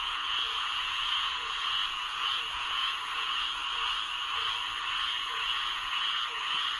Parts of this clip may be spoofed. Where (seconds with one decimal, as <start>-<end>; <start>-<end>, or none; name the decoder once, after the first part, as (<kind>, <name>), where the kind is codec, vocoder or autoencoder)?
0.0-3.6 (vocoder, Vocos); 5.2-6.8